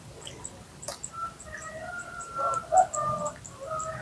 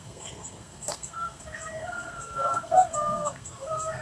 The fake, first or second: second